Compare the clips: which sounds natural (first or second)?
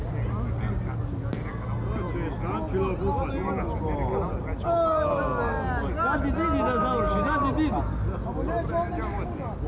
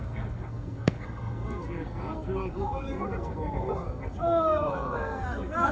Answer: first